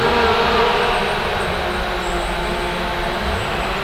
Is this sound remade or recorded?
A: recorded